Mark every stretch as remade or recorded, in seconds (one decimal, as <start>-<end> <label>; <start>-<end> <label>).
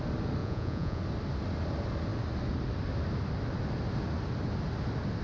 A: 0.0-0.4 recorded; 0.4-1.0 remade; 1.0-5.2 recorded